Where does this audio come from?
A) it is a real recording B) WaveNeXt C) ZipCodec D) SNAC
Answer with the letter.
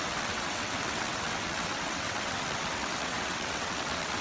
B